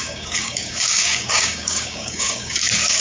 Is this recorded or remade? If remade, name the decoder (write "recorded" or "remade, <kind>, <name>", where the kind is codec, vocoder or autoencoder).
remade, codec, DAC